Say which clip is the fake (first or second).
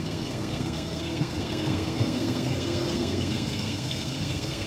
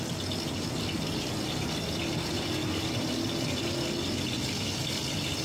first